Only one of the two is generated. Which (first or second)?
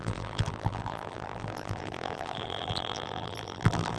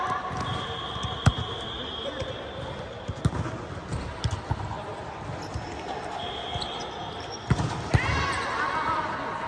first